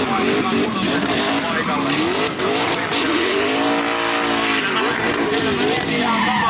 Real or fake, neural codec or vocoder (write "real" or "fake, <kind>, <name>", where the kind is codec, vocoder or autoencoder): real